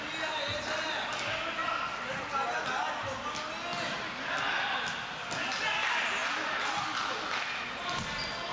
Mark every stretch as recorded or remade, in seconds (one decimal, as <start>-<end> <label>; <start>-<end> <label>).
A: 0.0-8.5 recorded